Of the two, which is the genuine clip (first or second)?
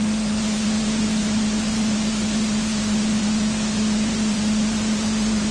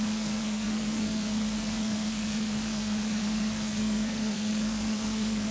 first